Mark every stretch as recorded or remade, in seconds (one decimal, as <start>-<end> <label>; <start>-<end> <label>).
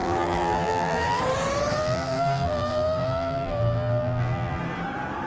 0.0-1.2 remade; 1.2-1.8 recorded; 1.8-4.6 remade; 4.6-5.3 recorded